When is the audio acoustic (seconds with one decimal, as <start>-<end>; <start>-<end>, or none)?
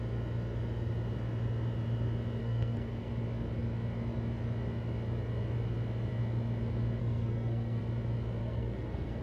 0.0-2.4; 3.1-7.0; 7.8-8.4